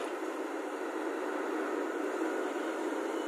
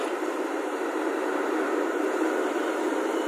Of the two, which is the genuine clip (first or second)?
first